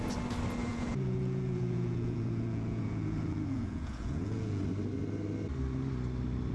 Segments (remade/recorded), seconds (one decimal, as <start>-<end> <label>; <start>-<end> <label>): 0.0-0.7 recorded; 0.7-4.6 remade; 4.6-6.5 recorded